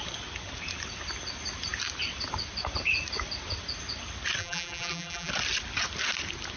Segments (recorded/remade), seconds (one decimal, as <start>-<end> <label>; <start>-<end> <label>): 0.0-4.4 recorded; 4.4-5.3 remade; 5.3-6.6 recorded